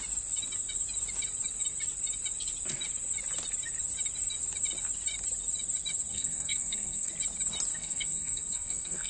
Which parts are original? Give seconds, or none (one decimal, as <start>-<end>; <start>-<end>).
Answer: 0.0-6.1; 7.1-7.7